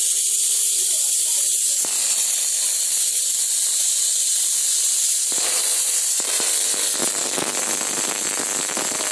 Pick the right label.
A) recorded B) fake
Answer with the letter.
B